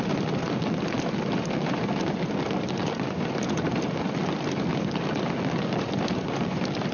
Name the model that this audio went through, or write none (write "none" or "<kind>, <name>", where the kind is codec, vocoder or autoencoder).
none